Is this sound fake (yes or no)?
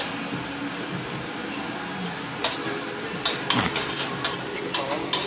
no